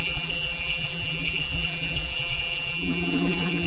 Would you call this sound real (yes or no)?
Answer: no